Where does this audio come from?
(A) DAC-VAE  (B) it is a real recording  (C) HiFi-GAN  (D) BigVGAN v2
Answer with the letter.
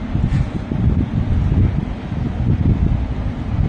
B